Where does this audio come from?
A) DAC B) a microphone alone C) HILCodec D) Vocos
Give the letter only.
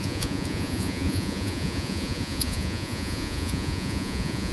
D